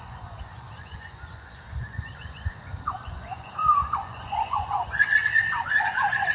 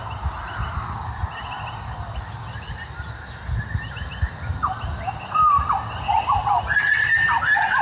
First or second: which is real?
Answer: second